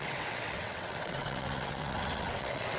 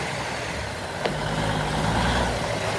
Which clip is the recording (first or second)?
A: second